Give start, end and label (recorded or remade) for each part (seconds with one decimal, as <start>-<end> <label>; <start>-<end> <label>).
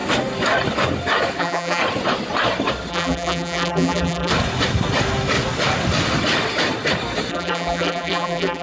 0.0-1.4 recorded; 1.4-1.8 remade; 1.8-2.9 recorded; 2.9-4.3 remade; 4.3-7.3 recorded; 7.3-8.6 remade